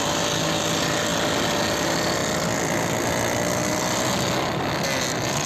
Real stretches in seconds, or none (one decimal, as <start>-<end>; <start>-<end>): 0.0-5.5